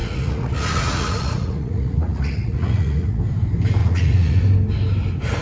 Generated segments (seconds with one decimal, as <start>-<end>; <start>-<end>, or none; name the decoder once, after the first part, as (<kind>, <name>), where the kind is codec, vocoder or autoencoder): 0.0-3.2 (vocoder, Vocos); 3.8-4.4